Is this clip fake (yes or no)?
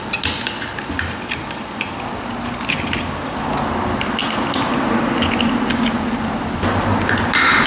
no